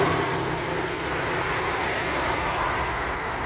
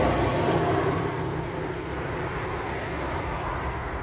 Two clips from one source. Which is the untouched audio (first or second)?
first